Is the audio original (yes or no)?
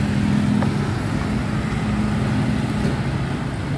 yes